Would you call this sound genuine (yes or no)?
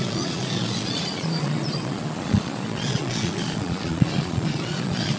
no